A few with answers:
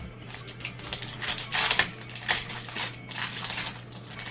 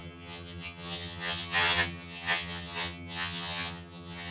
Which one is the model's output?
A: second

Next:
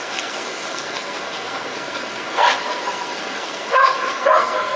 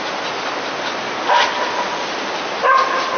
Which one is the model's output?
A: first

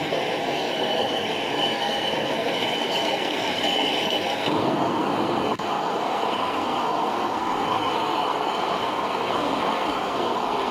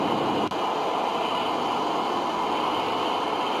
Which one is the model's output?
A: first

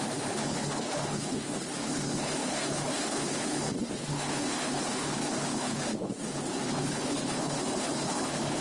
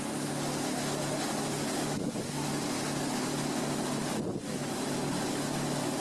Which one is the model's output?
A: first